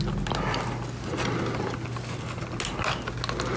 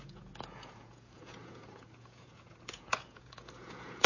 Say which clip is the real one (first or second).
first